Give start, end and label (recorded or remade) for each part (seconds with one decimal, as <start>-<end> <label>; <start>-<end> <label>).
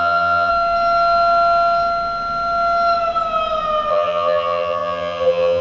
0.0-0.5 remade; 0.5-3.9 recorded; 3.9-5.6 remade